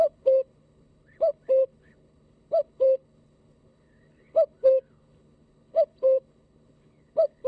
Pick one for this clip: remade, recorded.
remade